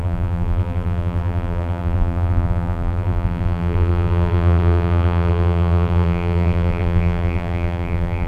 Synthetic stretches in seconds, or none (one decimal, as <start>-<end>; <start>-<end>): 0.0-8.3